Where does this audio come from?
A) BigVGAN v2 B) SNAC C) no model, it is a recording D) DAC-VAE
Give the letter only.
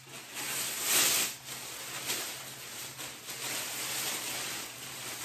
C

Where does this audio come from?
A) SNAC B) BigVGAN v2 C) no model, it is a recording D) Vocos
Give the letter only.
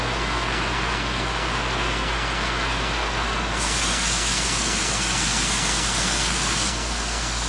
A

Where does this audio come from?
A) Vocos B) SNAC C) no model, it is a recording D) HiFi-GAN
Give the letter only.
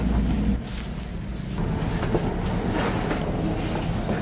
C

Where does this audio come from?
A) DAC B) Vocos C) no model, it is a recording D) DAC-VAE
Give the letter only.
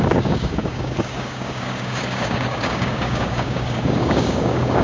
A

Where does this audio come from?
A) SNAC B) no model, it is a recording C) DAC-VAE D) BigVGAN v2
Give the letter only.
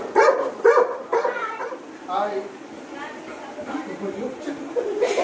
B